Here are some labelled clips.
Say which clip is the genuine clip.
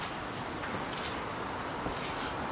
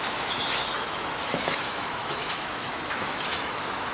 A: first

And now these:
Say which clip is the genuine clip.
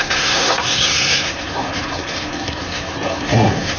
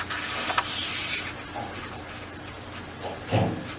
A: second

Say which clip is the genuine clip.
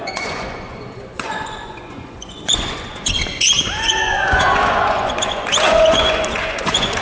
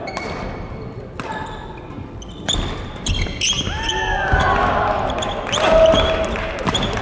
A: second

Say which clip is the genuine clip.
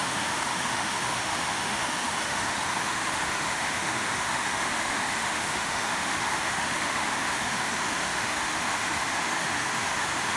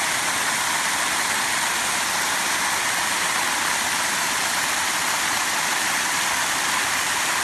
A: second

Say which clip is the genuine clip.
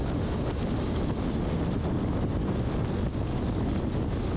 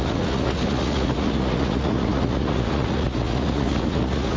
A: first